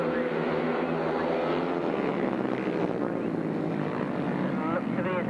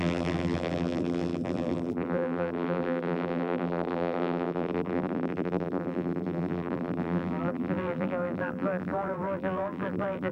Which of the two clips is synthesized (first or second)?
second